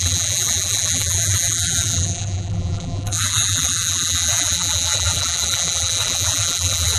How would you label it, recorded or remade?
remade